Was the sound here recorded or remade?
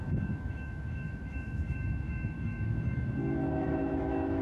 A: remade